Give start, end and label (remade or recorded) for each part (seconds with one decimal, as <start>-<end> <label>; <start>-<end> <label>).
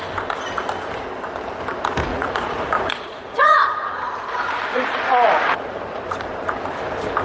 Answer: 0.0-2.1 recorded; 2.1-6.1 remade; 6.1-7.2 recorded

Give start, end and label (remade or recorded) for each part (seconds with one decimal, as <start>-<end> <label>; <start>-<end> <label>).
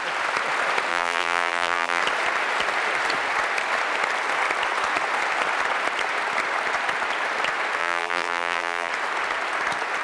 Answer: 0.0-0.9 recorded; 0.9-2.0 remade; 2.0-7.8 recorded; 7.8-8.9 remade; 8.9-10.0 recorded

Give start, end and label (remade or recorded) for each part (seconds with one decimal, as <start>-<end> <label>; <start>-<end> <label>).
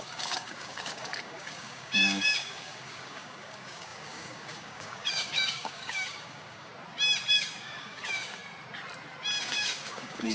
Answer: 0.0-6.7 remade; 6.7-7.3 recorded; 7.3-8.4 remade; 8.4-9.4 recorded; 9.4-10.3 remade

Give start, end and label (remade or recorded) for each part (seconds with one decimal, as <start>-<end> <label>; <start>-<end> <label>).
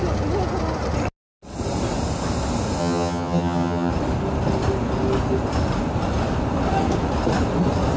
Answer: 0.0-2.8 recorded; 2.8-3.9 remade; 3.9-8.0 recorded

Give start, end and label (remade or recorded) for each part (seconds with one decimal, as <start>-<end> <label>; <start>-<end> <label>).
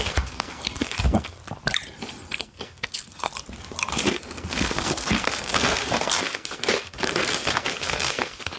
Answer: 0.0-1.4 remade; 1.4-2.4 recorded; 2.4-3.3 remade; 3.3-3.9 recorded; 3.9-8.6 remade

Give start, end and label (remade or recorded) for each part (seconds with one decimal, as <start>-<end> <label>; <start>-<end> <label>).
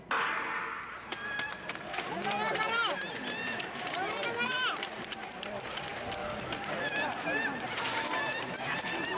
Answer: 0.0-9.2 recorded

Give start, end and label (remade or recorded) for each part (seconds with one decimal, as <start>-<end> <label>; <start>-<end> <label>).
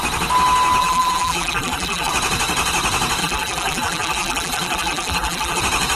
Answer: 0.0-0.8 recorded; 0.8-2.1 remade; 2.1-3.2 recorded; 3.2-5.6 remade; 5.6-6.0 recorded